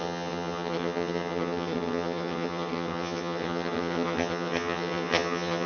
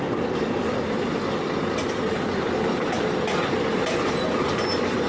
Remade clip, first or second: first